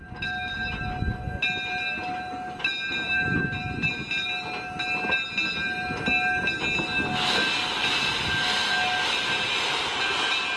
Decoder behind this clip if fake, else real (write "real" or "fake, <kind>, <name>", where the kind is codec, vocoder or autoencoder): real